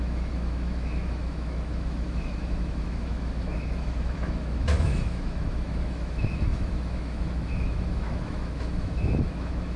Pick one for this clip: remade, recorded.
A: remade